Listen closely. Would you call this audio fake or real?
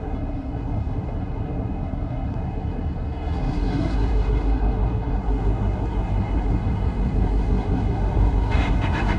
fake